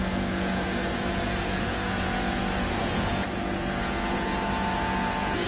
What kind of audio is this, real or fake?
fake